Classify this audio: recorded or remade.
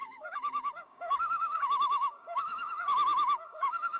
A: remade